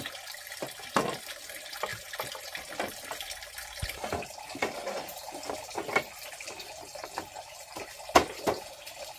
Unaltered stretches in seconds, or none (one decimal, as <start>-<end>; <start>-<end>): none

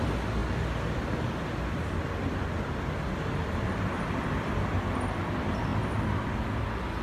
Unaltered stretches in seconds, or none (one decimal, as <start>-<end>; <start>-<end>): 0.0-7.0

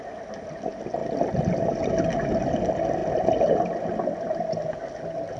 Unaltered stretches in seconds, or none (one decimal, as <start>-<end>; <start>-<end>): 0.0-5.4